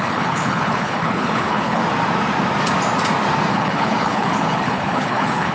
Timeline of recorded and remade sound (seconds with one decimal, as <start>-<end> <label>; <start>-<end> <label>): 0.0-1.8 remade; 1.8-3.5 recorded; 3.5-5.5 remade